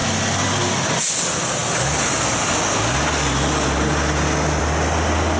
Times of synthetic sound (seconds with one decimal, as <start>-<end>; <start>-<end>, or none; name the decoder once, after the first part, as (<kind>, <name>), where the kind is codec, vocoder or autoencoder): none